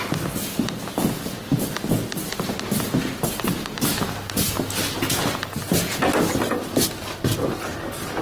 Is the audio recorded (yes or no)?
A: yes